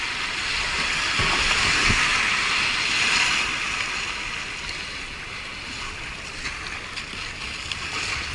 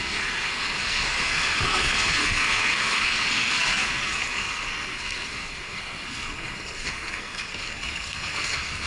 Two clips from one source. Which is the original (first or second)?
first